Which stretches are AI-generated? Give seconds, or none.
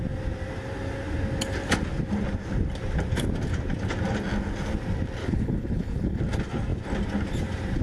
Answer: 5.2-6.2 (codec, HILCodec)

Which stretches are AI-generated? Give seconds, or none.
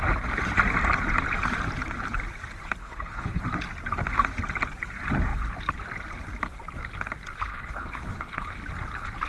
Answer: 2.8-3.4 (codec, HILCodec); 7.5-8.5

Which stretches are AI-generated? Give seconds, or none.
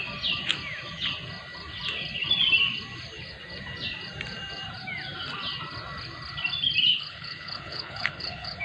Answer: 6.9-8.6 (codec, HILCodec)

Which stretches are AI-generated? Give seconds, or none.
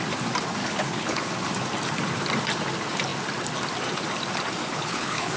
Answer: 0.6-1.3 (codec, HILCodec); 4.6-5.4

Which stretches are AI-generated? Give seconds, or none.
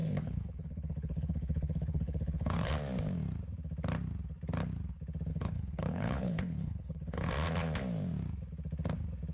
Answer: 0.0-2.7 (codec, HILCodec); 5.3-7.3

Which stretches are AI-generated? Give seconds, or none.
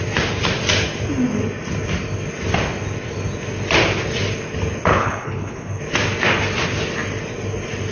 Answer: 4.9-5.8 (codec, HILCodec)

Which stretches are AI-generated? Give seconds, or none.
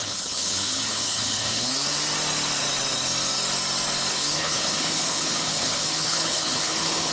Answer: 0.0-1.7 (codec, HILCodec); 4.1-7.1